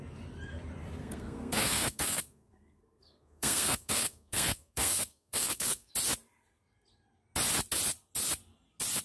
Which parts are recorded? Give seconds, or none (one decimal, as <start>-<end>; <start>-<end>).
0.0-1.0; 5.9-9.0